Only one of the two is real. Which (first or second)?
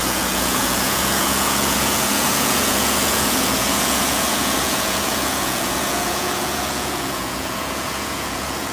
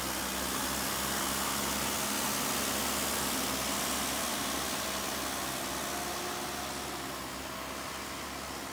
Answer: second